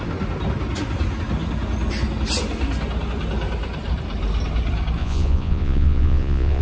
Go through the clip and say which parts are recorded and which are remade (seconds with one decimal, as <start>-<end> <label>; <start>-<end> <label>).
0.0-5.0 recorded; 5.0-6.6 remade